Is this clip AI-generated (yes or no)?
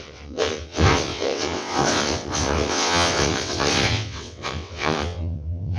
yes